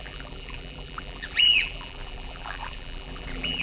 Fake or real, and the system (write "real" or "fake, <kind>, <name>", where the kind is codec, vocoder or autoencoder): fake, vocoder, BigVGAN v2